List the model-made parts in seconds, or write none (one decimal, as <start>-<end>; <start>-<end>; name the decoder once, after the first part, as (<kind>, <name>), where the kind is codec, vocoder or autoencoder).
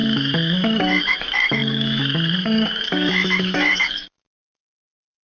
0.0-5.2 (autoencoder, DAC-VAE)